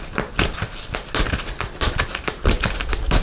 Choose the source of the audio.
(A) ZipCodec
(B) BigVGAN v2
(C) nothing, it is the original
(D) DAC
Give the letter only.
C